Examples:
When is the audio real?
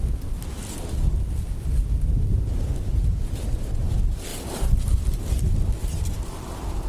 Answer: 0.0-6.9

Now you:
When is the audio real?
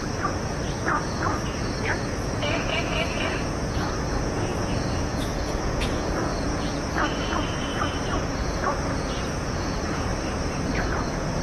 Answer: 10.1-10.8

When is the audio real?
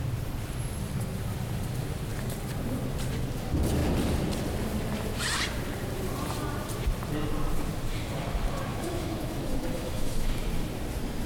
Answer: 0.0-8.7; 10.3-11.3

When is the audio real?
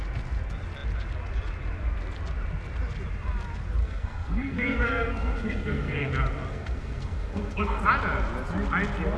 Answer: 0.0-3.8; 6.1-6.5; 7.8-9.2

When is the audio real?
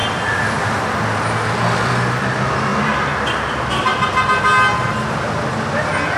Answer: 0.0-6.2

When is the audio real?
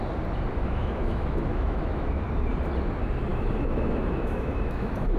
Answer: 0.0-0.6; 2.2-3.3